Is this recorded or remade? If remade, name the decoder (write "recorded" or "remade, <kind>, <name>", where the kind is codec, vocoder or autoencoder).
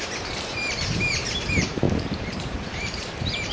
remade, vocoder, BigVGAN v2